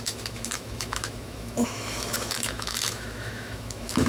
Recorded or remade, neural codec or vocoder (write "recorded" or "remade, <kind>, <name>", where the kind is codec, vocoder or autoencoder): remade, autoencoder, DAC-VAE